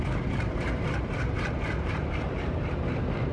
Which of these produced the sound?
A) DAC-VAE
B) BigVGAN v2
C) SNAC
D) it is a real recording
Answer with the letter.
B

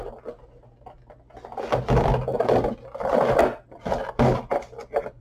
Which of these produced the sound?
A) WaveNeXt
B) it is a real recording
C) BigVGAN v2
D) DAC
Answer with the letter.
B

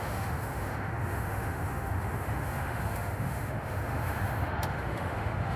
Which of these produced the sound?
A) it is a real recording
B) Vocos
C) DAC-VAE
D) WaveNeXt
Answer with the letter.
C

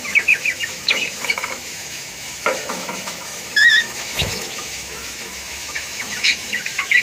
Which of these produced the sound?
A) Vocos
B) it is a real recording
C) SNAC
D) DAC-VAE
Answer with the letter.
D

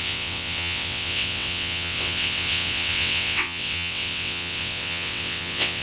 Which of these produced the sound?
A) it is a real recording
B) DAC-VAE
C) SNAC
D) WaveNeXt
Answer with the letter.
D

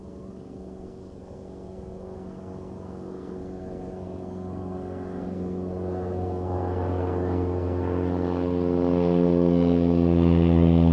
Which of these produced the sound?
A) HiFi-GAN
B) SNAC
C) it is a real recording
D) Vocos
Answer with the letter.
B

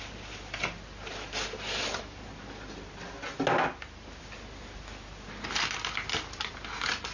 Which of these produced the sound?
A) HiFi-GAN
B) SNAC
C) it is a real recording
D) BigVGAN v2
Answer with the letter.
C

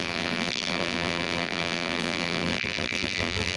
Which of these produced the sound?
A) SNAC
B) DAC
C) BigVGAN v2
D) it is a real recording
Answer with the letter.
C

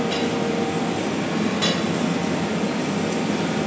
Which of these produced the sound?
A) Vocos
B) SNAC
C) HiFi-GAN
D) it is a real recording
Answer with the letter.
D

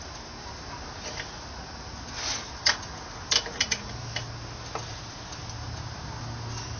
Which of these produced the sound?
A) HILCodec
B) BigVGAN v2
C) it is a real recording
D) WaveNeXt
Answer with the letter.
C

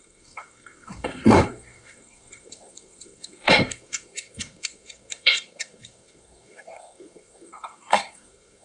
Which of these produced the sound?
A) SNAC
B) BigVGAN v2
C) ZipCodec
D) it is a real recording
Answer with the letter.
A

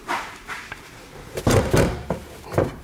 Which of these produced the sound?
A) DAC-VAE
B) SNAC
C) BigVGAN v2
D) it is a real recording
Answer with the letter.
C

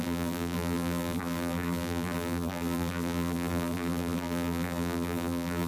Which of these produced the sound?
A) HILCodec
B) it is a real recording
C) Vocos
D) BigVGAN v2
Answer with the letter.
D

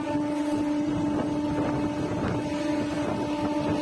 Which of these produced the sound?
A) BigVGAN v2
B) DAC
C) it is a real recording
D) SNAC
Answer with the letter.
C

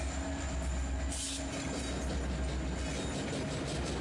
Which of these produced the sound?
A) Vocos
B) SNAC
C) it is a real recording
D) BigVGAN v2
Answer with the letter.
C